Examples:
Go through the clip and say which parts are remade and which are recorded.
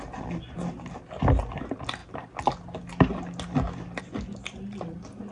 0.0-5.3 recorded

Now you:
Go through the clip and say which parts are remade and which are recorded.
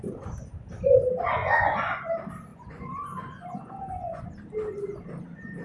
0.0-1.4 recorded; 1.4-2.1 remade; 2.1-2.5 recorded; 2.5-4.2 remade; 4.2-5.6 recorded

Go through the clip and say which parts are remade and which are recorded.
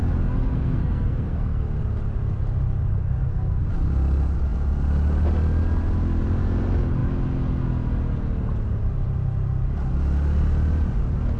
0.0-0.4 recorded; 0.4-1.7 remade; 1.7-2.9 recorded; 2.9-3.7 remade; 3.7-11.4 recorded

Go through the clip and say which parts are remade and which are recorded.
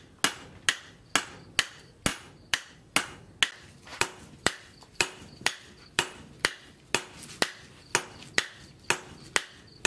0.0-2.1 recorded; 2.1-2.7 remade; 2.7-3.9 recorded; 3.9-6.8 remade; 6.8-9.9 recorded